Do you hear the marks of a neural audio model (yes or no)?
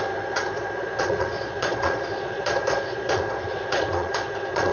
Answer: yes